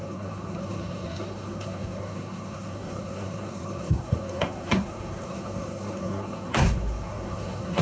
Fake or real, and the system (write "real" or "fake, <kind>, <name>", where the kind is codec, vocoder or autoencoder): fake, codec, SNAC